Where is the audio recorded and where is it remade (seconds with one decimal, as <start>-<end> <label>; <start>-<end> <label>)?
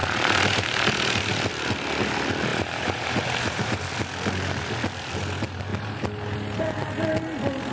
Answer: 0.0-2.5 recorded; 2.5-3.8 remade; 3.8-7.7 recorded